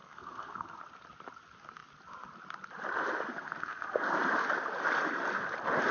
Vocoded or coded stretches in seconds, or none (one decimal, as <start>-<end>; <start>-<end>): 0.0-0.8; 3.3-4.2